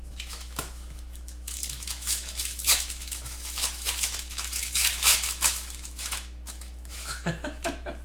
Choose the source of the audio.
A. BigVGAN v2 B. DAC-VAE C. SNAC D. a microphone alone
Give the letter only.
B